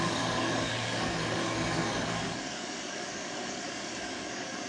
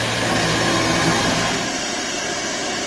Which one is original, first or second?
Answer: second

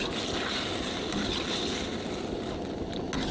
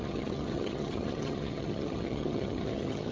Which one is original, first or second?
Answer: first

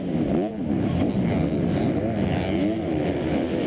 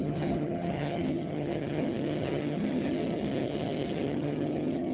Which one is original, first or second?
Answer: first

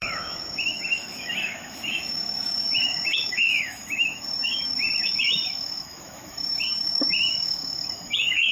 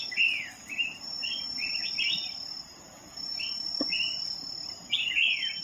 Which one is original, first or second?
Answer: second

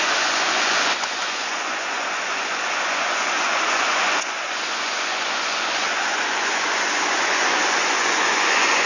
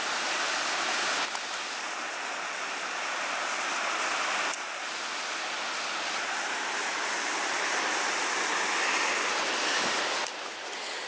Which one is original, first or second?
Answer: second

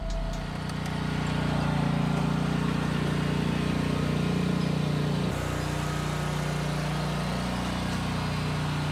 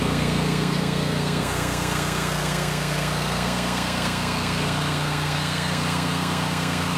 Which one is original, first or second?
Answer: first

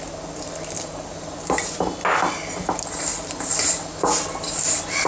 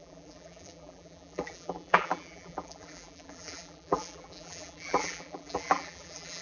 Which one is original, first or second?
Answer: first